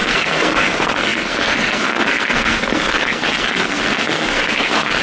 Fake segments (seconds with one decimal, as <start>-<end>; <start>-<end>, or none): 0.0-5.0